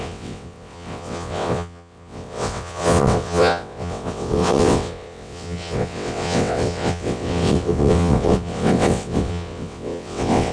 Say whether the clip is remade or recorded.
remade